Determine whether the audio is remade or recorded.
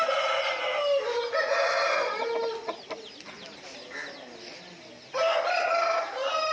recorded